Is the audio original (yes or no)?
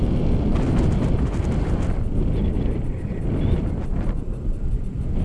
yes